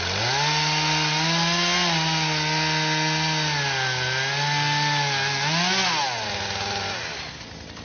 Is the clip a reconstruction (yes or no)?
no